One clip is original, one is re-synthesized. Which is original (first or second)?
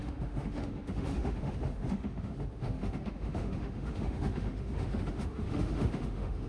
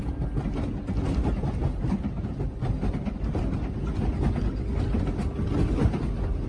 second